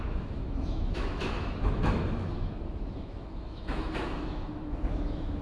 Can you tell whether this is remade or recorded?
remade